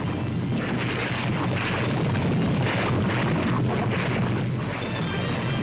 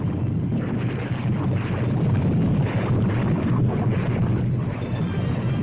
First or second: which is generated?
second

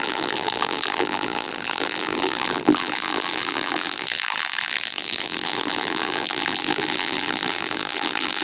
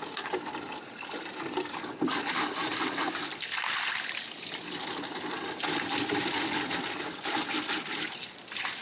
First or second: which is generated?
first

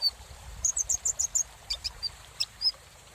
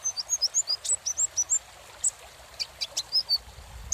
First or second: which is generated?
first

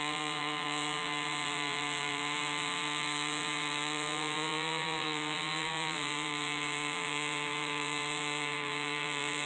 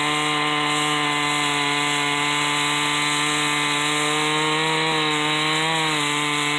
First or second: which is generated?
first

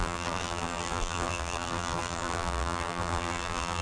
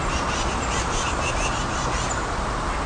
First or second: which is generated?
first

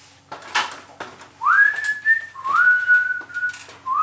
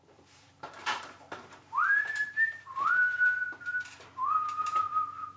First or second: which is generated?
second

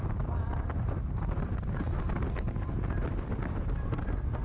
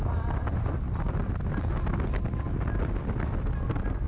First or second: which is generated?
first